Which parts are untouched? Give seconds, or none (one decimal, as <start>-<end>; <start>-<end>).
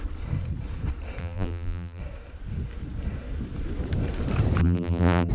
0.0-1.2; 2.0-4.6